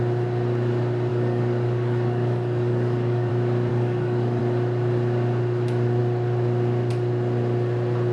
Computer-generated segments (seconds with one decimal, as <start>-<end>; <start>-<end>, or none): 1.1-3.3; 3.7-4.4